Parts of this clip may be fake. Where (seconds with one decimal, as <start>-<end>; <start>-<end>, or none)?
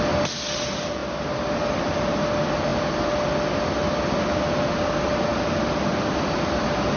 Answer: none